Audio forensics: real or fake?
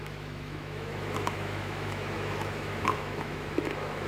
fake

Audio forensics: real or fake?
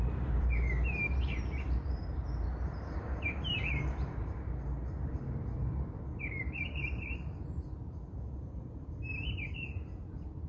fake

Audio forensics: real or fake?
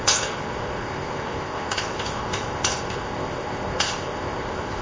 fake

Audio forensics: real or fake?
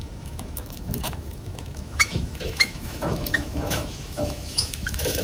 fake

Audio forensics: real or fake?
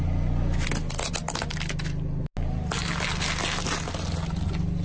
real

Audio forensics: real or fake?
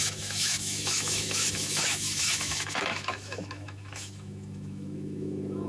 fake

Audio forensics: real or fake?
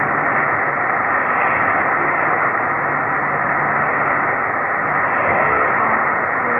real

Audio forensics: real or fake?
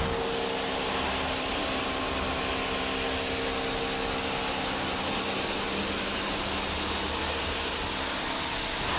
real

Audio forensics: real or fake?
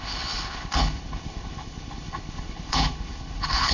fake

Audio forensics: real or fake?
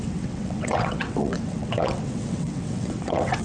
fake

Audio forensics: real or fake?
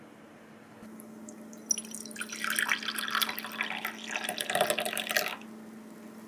real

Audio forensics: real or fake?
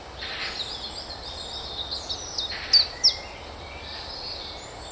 real